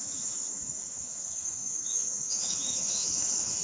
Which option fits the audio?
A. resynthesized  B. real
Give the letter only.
A